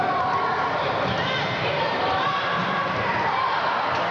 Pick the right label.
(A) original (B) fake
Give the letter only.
A